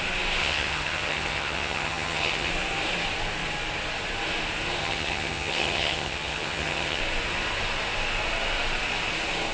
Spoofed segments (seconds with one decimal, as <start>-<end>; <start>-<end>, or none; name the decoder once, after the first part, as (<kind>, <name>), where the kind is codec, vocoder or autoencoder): 0.4-2.5 (vocoder, HiFi-GAN); 4.8-7.0